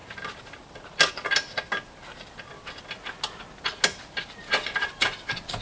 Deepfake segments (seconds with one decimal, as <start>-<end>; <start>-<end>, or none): none